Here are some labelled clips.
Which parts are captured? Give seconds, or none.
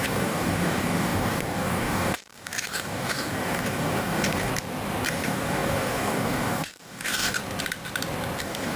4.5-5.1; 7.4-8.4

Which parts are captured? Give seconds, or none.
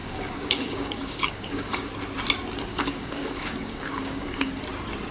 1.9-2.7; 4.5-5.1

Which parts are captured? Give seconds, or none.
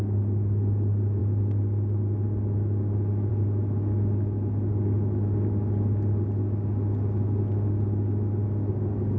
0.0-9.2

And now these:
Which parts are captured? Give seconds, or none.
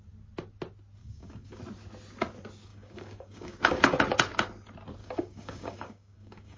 0.0-1.0; 1.6-2.7; 4.0-5.0